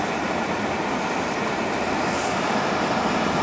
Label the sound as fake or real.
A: real